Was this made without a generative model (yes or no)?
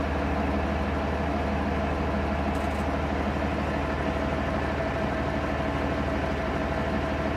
yes